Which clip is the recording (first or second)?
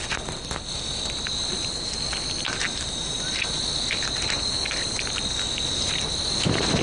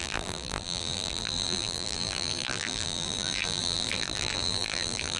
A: first